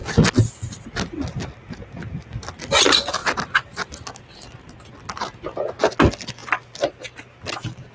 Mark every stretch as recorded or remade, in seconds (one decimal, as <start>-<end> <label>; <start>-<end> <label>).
0.0-7.9 recorded